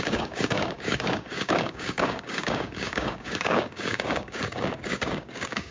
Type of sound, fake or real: fake